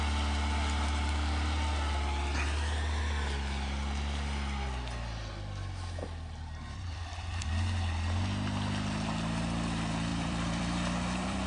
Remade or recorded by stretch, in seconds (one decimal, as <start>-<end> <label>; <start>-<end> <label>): 0.0-10.1 recorded; 10.1-11.5 remade